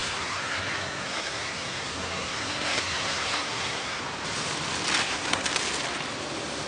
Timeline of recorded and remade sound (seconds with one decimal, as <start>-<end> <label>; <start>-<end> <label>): 0.0-4.0 remade; 4.0-5.0 recorded; 5.0-5.5 remade; 5.5-6.7 recorded